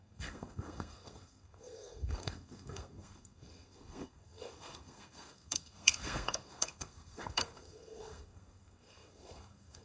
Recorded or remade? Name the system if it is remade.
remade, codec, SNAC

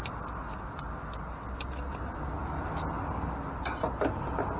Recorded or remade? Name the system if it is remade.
recorded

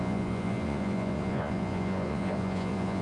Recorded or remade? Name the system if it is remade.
remade, vocoder, Vocos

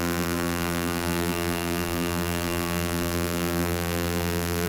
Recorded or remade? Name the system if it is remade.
remade, vocoder, BigVGAN v2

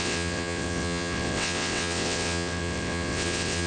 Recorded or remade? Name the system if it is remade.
remade, vocoder, WaveNeXt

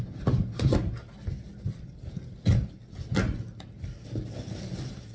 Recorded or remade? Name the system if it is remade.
recorded